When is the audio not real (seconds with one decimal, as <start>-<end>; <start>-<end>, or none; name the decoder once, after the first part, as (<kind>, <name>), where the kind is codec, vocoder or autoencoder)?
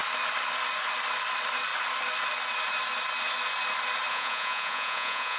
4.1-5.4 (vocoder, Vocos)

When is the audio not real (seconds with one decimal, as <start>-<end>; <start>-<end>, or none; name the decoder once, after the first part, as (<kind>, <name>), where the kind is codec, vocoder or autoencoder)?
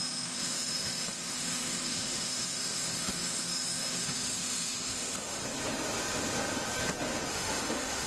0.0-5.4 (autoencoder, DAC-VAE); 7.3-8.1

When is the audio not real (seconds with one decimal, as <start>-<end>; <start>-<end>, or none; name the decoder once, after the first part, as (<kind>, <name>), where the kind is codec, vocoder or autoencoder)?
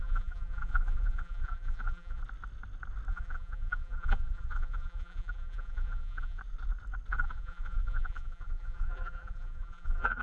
0.0-2.2 (vocoder, BigVGAN v2); 3.1-6.4; 7.1-10.2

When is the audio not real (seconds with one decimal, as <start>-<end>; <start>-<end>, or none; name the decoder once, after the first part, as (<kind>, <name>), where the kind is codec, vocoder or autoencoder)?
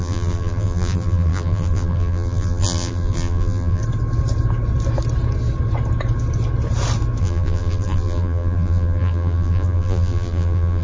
0.0-3.8 (vocoder, BigVGAN v2); 7.2-10.8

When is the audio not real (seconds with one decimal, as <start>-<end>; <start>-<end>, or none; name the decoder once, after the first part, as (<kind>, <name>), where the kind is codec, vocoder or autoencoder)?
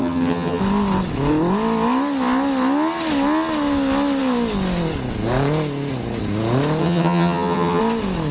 0.0-0.6 (vocoder, HiFi-GAN); 6.8-7.8